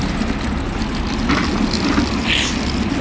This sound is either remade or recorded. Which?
recorded